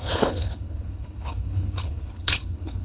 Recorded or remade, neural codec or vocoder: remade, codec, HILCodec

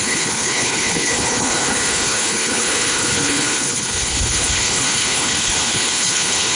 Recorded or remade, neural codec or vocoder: remade, codec, HILCodec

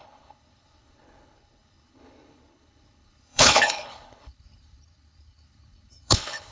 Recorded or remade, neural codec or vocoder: remade, codec, HILCodec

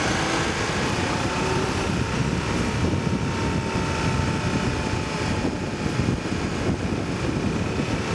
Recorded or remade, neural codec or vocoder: recorded